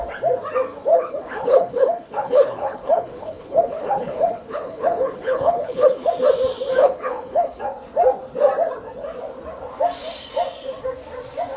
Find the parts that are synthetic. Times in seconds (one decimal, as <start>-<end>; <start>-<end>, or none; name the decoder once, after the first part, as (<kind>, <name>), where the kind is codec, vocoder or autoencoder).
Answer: 0.9-6.1 (codec, HILCodec); 6.8-7.6